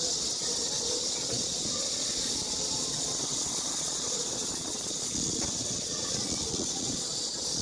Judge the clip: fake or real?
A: fake